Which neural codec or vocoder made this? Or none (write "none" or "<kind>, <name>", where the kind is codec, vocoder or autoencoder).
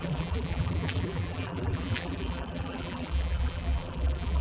vocoder, BigVGAN v2